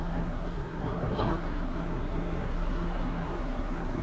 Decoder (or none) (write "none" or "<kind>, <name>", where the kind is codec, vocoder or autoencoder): codec, SNAC